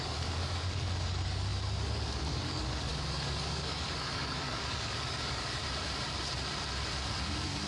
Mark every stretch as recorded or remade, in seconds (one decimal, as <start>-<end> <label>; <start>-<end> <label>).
0.0-5.6 remade; 5.6-7.2 recorded; 7.2-7.7 remade